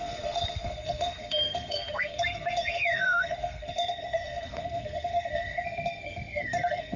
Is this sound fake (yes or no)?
yes